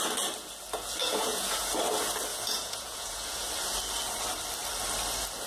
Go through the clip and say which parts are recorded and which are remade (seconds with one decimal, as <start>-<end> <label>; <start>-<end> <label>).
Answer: 0.0-1.0 recorded; 1.0-1.7 remade; 1.7-2.3 recorded; 2.3-3.5 remade; 3.5-5.5 recorded